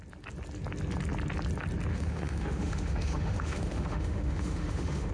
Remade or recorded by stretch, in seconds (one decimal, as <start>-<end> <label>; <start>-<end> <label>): 0.0-1.9 recorded; 1.9-5.1 remade